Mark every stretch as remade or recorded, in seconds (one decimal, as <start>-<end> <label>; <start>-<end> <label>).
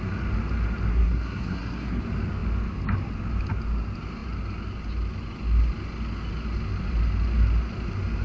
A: 0.0-0.9 recorded; 0.9-2.0 remade; 2.0-8.2 recorded